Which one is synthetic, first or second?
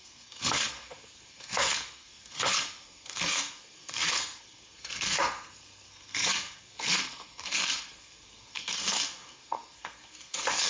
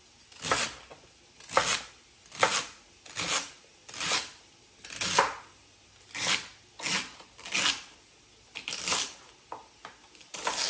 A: first